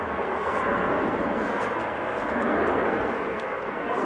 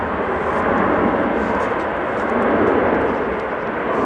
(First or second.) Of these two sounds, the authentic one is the second